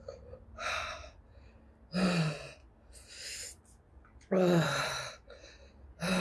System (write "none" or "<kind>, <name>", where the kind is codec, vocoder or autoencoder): none